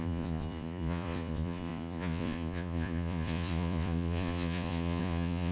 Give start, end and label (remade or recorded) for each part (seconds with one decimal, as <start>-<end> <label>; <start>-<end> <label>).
0.0-5.5 remade